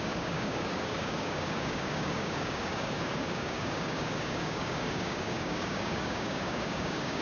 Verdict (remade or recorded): remade